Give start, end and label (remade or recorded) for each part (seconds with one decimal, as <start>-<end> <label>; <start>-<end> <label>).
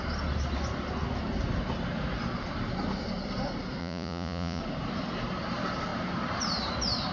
0.0-3.8 recorded; 3.8-4.6 remade; 4.6-7.1 recorded